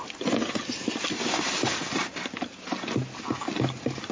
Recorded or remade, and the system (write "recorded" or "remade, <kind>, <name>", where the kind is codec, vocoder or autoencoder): recorded